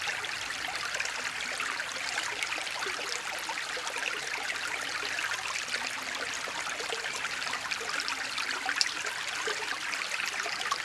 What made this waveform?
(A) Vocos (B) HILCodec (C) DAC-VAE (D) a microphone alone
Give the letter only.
D